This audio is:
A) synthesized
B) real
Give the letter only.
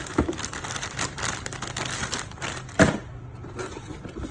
A